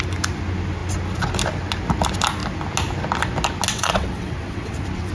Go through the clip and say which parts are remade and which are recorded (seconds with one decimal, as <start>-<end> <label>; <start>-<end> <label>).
0.0-3.7 recorded; 3.7-5.1 remade